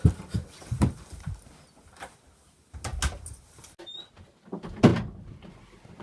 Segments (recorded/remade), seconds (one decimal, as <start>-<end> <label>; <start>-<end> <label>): 0.0-6.0 recorded